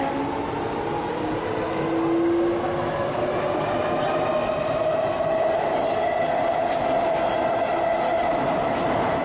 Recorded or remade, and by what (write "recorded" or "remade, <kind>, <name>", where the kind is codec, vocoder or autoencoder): recorded